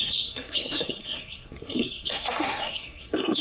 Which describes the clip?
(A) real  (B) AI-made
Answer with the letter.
B